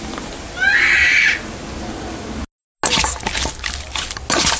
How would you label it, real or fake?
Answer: real